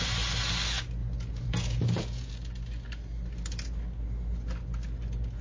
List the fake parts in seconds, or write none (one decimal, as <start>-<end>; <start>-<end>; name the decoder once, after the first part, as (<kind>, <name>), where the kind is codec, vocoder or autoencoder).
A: 1.0-2.3 (vocoder, Vocos)